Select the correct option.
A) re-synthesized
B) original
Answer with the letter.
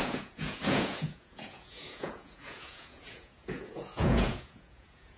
A